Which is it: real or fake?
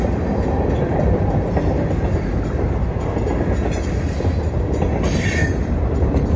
fake